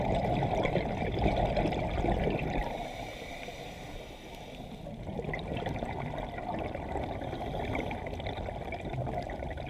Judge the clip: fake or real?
real